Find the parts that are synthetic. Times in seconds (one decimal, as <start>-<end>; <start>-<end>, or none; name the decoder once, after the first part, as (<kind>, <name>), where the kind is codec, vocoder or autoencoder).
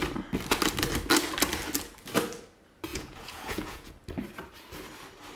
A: 2.9-3.9 (vocoder, Vocos)